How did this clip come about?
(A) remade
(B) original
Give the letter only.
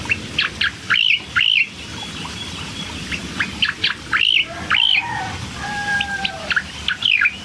A